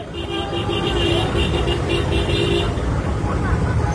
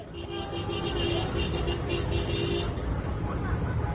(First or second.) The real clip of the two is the second